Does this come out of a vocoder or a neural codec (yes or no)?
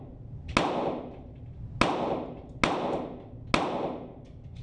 no